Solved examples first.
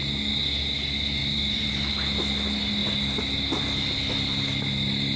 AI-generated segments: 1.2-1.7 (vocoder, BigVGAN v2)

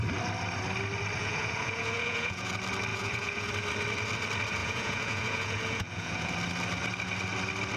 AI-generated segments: 1.2-2.5 (vocoder, Vocos); 2.9-3.5; 4.6-6.3

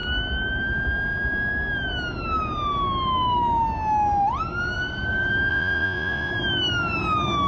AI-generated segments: 5.5-6.3 (vocoder, Vocos)

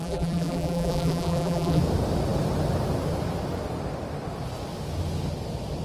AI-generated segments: 0.0-1.8 (vocoder, BigVGAN v2)

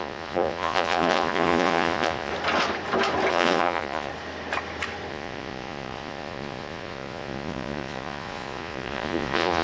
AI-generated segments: 0.0-2.3 (vocoder, Vocos); 3.3-4.1; 5.1-9.6